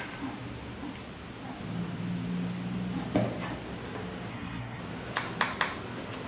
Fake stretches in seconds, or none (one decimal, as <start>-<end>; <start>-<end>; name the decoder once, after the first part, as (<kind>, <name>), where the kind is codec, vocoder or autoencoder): 4.3-4.8 (codec, SNAC)